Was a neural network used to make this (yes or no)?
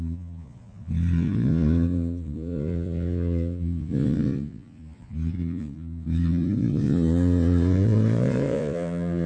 yes